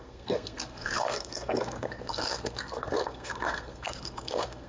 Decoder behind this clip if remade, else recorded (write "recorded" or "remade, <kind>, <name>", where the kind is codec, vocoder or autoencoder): remade, codec, SNAC